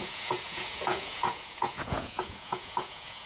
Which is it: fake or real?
fake